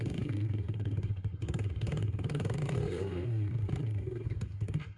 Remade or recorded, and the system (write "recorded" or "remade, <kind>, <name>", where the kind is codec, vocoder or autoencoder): remade, codec, SNAC